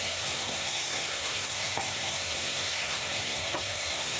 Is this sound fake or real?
fake